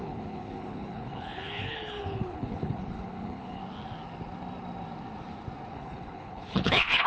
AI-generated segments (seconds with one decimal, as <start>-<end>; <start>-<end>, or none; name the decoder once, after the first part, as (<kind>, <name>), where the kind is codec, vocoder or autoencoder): 0.0-3.6 (codec, HILCodec); 5.7-7.1